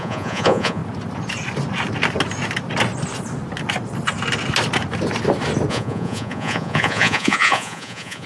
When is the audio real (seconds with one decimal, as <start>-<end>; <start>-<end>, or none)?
0.8-5.7